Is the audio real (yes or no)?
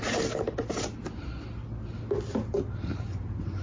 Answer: yes